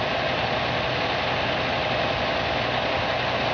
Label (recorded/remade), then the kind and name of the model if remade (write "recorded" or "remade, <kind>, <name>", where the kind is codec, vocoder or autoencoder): recorded